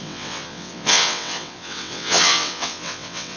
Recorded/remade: remade